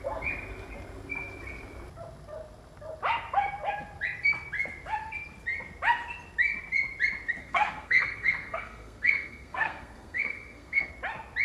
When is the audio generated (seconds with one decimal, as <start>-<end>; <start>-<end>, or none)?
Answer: 7.4-10.9